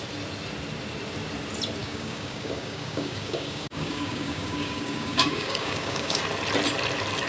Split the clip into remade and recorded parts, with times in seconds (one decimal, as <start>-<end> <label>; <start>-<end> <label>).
0.0-1.8 recorded; 1.8-6.2 remade; 6.2-7.3 recorded